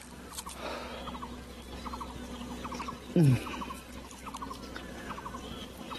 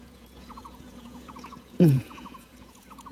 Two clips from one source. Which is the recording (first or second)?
first